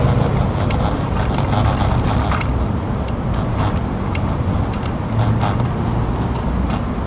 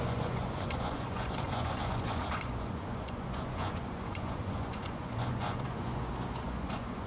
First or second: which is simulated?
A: second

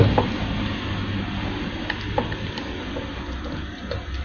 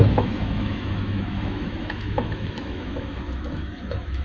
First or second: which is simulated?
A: second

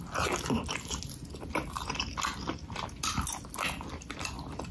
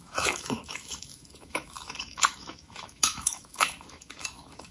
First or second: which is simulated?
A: second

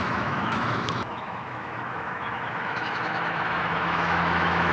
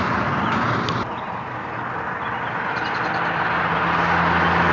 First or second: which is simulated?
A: first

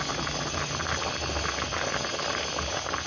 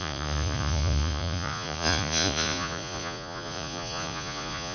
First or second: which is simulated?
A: second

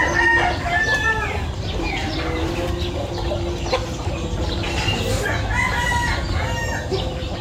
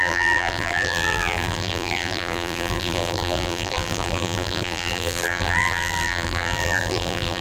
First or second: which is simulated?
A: second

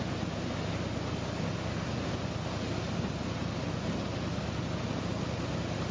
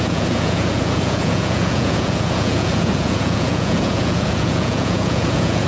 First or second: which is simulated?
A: second